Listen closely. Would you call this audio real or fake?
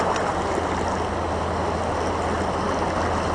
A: real